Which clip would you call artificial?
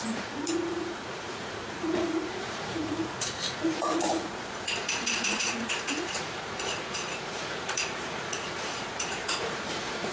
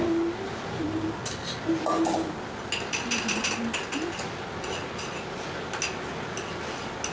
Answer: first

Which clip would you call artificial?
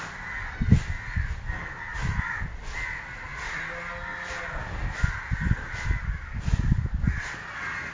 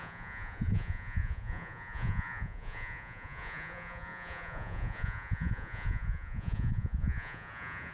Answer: second